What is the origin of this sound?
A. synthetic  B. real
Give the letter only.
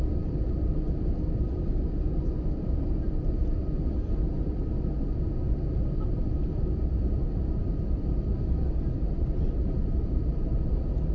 B